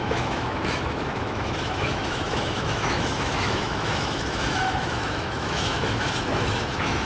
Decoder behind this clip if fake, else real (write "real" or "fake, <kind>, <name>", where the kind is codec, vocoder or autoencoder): fake, autoencoder, DAC-VAE